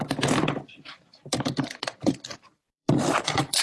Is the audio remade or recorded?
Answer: remade